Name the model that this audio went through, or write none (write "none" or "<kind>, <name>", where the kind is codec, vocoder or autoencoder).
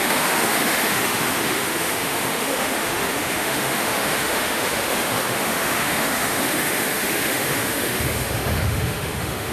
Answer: autoencoder, DAC-VAE